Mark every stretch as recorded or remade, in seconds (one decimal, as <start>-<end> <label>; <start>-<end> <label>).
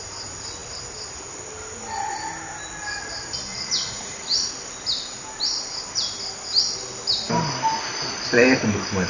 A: 0.0-3.5 recorded; 3.5-4.5 remade; 4.5-9.1 recorded